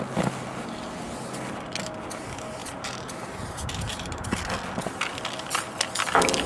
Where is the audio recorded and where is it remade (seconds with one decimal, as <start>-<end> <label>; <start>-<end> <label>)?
0.0-2.6 recorded; 2.6-4.4 remade; 4.4-6.5 recorded